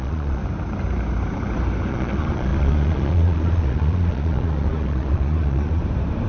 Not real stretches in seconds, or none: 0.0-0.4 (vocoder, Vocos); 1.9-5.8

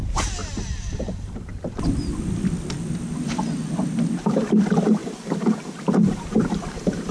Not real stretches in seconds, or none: 1.1-1.5 (vocoder, BigVGAN v2); 4.1-7.1

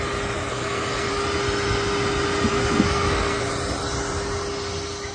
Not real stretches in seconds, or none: 0.5-1.1 (codec, SNAC); 2.5-3.4

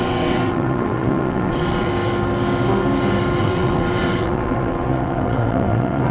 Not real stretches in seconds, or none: 0.0-1.9 (vocoder, WaveNeXt); 3.4-6.1

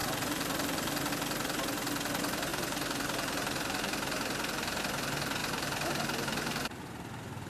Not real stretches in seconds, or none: 0.0-1.1 (vocoder, BigVGAN v2); 2.5-4.8; 5.4-6.8

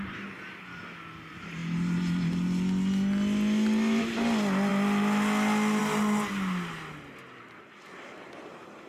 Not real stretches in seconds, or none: none

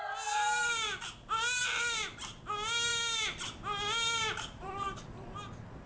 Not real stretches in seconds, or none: none

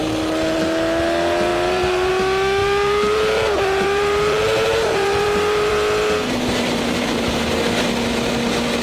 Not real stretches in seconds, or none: 1.5-2.1 (vocoder, BigVGAN v2); 2.6-5.7